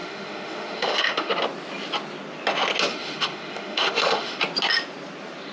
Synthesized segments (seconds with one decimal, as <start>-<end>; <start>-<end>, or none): 0.0-1.3; 2.9-4.4